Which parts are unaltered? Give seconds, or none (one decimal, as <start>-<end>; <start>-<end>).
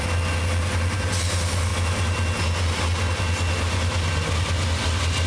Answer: 1.7-5.3